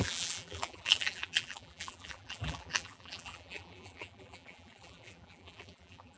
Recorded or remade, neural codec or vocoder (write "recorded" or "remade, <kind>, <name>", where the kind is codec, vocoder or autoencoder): remade, vocoder, BigVGAN v2